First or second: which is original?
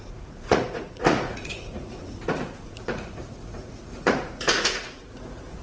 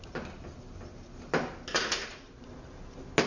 second